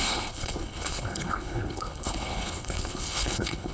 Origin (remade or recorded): remade